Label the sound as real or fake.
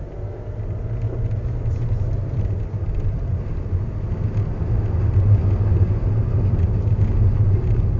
real